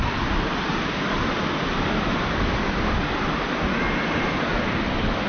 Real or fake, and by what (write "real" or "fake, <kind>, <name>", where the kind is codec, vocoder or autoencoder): real